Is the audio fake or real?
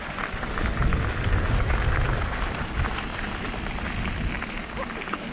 real